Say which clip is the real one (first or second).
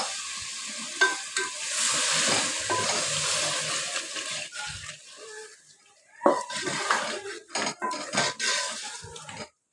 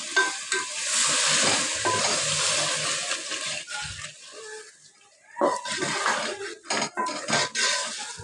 second